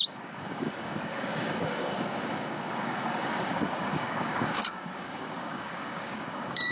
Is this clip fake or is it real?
fake